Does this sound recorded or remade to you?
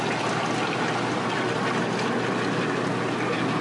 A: recorded